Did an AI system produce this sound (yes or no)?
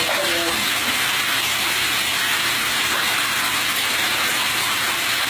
no